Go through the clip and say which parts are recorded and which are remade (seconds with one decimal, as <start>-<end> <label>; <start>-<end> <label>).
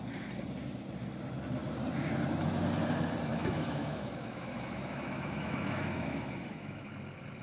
0.0-3.3 recorded; 3.3-6.9 remade; 6.9-7.4 recorded